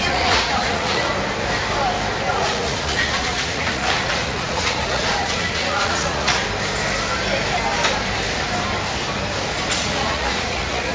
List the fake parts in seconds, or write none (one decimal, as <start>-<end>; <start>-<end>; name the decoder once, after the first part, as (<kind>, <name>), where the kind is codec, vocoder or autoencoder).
0.0-1.1 (vocoder, Vocos); 2.3-6.4; 9.7-10.9